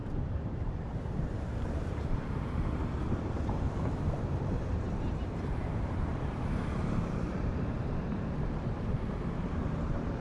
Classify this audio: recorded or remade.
remade